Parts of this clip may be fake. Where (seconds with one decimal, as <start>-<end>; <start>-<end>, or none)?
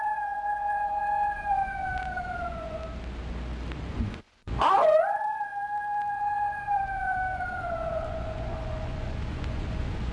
0.0-2.8; 3.9-5.5; 6.1-10.1